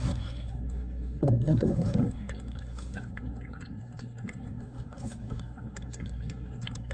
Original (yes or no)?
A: no